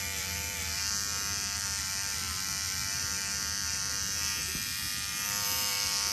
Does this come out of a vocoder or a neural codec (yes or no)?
yes